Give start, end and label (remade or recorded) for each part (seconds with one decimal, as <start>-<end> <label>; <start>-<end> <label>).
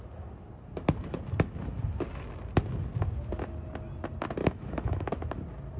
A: 0.0-4.4 recorded; 4.4-5.1 remade; 5.1-5.8 recorded